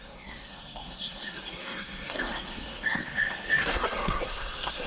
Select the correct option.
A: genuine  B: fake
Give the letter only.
B